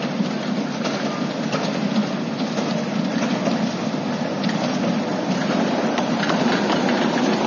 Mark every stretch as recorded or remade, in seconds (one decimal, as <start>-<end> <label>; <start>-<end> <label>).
0.0-7.5 recorded